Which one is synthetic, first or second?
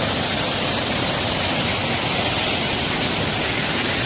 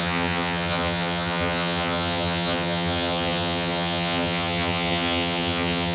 second